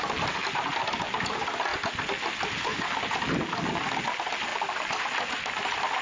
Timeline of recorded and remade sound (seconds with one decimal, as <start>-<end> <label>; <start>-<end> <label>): 0.0-6.0 recorded